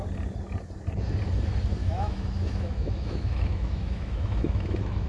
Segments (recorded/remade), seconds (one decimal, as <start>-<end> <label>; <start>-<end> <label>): 0.0-1.8 recorded; 1.8-5.1 remade